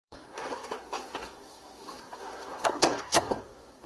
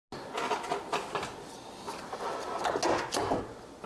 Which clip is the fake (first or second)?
first